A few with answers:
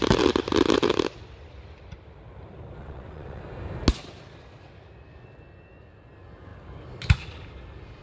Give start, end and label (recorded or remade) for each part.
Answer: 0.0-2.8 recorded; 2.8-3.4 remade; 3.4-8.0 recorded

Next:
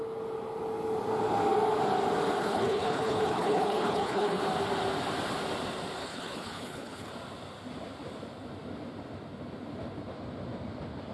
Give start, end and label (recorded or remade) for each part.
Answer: 0.0-2.4 recorded; 2.4-4.4 remade; 4.4-6.0 recorded; 6.0-7.1 remade; 7.1-11.1 recorded